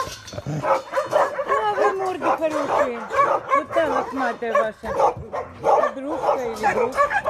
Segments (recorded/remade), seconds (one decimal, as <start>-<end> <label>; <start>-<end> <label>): 0.0-7.3 recorded